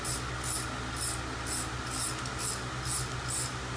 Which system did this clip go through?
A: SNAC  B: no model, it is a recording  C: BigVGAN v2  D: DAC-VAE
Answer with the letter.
B